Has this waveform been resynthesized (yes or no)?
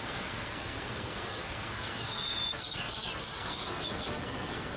yes